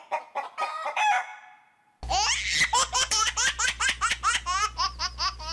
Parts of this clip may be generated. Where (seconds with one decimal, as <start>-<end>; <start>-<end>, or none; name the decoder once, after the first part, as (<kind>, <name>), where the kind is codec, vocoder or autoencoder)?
none

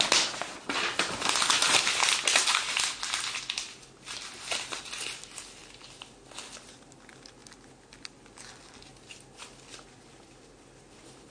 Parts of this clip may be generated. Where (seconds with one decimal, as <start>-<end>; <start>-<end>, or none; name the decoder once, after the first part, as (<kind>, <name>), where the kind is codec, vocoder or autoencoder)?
none

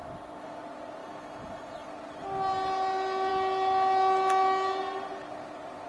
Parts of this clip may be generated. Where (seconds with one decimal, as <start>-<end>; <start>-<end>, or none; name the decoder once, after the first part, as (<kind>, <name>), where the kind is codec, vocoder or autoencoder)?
0.0-0.6 (autoencoder, DAC-VAE); 1.0-1.9